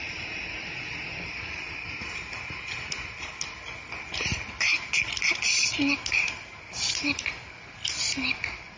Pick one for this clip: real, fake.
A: real